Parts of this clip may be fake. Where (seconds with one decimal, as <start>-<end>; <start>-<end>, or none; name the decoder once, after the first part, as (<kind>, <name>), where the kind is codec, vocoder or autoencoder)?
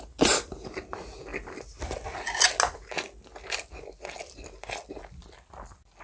none